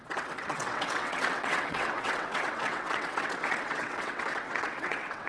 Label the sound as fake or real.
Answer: fake